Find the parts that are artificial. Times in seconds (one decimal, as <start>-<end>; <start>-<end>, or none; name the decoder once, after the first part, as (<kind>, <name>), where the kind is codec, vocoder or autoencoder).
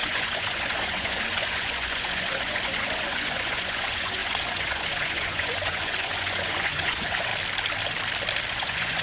0.0-7.3 (vocoder, Vocos); 8.5-9.0